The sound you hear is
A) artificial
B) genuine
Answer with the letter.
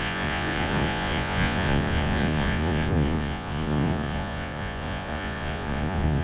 A